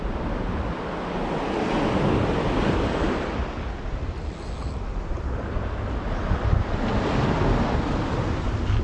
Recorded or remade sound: recorded